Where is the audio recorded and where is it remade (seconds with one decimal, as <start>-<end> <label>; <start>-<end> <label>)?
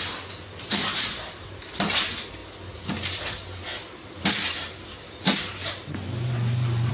0.0-5.6 recorded; 5.6-6.9 remade